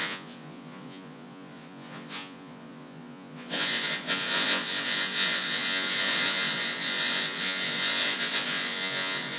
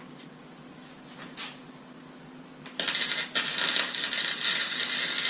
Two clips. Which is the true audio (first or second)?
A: second